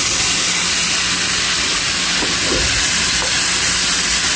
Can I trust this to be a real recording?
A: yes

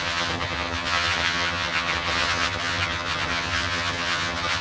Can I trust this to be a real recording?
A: no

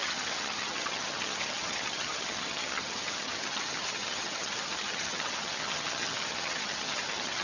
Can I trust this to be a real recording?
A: no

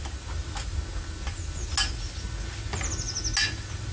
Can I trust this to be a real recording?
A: yes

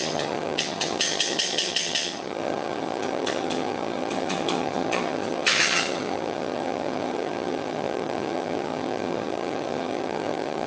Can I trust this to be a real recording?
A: no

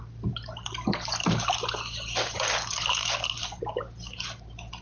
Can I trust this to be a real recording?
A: yes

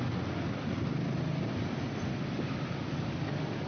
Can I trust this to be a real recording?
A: yes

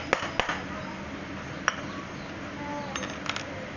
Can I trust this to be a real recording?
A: yes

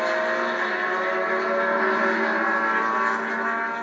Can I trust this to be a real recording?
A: yes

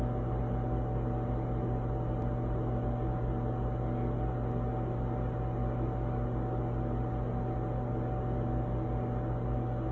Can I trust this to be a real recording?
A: yes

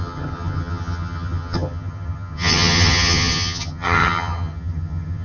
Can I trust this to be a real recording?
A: no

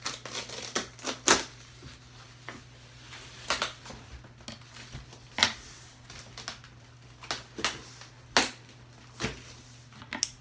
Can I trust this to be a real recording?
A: yes